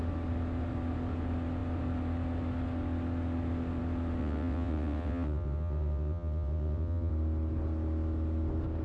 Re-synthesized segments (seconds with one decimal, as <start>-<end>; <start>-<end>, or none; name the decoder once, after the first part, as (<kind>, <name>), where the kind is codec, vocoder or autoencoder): 4.2-7.1 (vocoder, WaveNeXt)